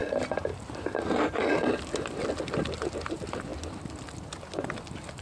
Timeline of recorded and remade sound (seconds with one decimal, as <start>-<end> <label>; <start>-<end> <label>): 0.0-5.2 recorded